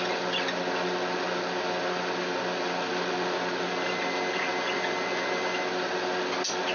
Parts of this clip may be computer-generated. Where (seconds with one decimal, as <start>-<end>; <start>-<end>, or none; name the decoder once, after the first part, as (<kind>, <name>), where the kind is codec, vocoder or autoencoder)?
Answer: none